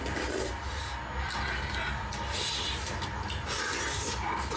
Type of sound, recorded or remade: recorded